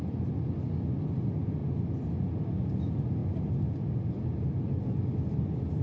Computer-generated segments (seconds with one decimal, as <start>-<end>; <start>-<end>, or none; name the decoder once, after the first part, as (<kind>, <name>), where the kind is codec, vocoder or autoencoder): none